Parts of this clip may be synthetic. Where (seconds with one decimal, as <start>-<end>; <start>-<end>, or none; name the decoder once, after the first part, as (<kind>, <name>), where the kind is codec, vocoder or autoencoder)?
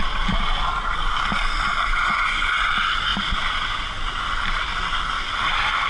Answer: 1.9-2.7 (vocoder, Vocos)